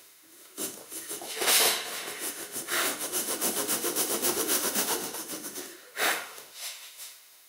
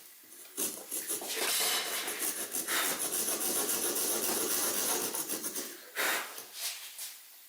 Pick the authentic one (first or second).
second